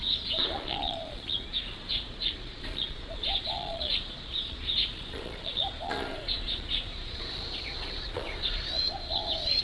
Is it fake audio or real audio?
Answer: fake